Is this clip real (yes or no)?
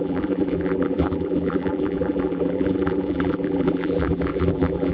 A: no